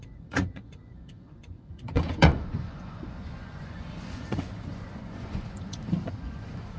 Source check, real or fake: fake